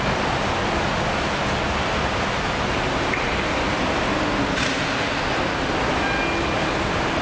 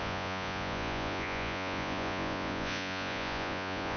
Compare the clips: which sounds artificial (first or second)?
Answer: second